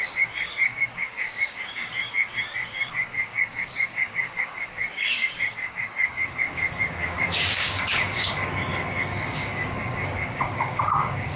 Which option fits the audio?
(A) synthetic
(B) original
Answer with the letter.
A